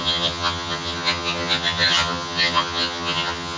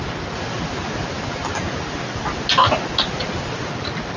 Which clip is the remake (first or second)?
first